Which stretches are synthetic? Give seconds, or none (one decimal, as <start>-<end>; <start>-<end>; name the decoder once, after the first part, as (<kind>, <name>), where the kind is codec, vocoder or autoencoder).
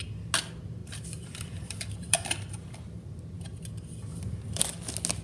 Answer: 0.8-3.2 (vocoder, BigVGAN v2); 4.1-4.6